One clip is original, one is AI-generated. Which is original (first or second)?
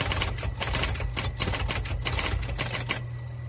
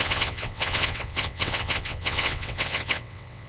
first